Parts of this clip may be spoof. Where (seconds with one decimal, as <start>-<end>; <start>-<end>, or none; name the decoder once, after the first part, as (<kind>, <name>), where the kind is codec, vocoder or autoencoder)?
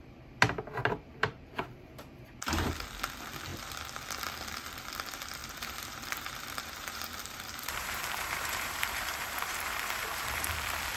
0.8-2.7 (vocoder, BigVGAN v2); 5.4-10.5